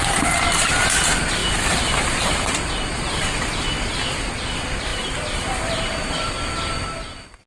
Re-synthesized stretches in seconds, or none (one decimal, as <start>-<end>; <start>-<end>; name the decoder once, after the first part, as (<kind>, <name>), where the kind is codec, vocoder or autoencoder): 1.4-2.7 (vocoder, BigVGAN v2); 4.9-6.3